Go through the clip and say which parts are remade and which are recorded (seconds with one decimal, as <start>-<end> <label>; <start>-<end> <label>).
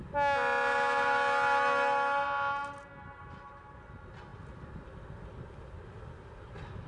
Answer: 0.0-6.9 recorded